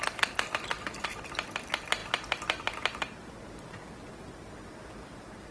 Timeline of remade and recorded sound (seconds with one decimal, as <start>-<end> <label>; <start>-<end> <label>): 0.0-5.5 recorded